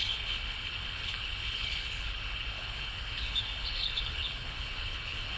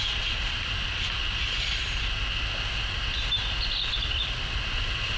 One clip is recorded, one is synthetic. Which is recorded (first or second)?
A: second